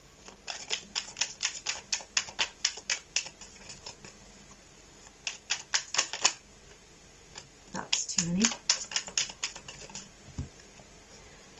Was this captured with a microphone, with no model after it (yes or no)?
yes